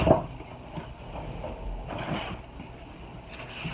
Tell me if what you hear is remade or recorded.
recorded